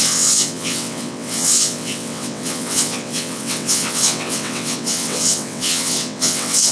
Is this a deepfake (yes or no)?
yes